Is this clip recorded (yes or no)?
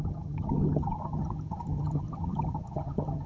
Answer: no